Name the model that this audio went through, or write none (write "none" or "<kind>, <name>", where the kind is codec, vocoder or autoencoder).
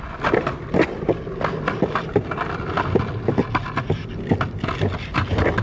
none